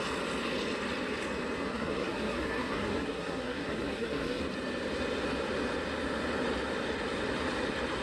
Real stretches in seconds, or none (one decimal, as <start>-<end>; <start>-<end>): 0.0-1.7; 4.4-8.0